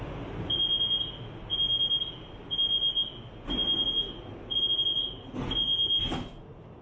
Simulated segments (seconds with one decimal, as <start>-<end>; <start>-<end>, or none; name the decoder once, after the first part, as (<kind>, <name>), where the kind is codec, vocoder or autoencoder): none